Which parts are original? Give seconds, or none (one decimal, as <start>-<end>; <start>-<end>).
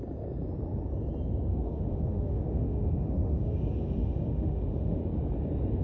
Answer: 0.0-1.5; 5.0-5.8